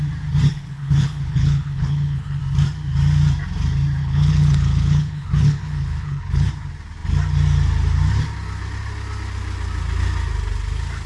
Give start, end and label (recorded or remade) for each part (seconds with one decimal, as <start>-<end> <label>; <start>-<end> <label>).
0.0-0.5 recorded; 0.5-2.4 remade; 2.4-4.0 recorded; 4.0-6.5 remade; 6.5-11.1 recorded